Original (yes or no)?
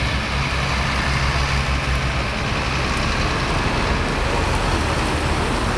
yes